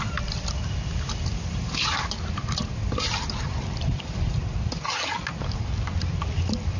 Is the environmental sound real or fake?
real